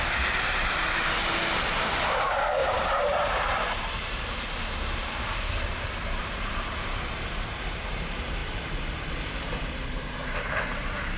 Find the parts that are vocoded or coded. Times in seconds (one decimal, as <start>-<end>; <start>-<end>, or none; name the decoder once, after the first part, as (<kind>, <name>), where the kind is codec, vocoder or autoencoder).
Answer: 0.0-11.2 (vocoder, BigVGAN v2)